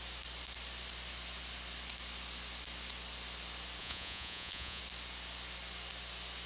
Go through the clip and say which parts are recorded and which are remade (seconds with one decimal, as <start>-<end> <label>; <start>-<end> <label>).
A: 0.0-3.8 recorded; 3.8-4.8 remade; 4.8-6.5 recorded